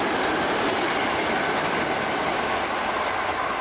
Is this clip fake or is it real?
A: real